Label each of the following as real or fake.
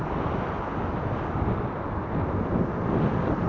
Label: real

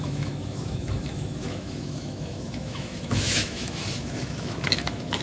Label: fake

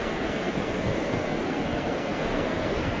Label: fake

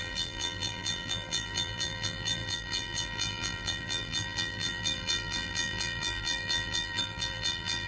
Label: fake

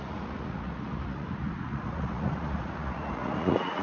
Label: fake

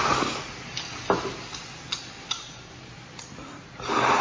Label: real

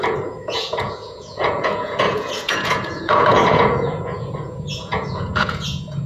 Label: fake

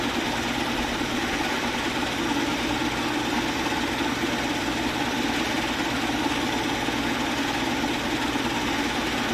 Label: real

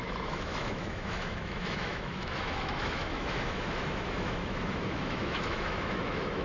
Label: fake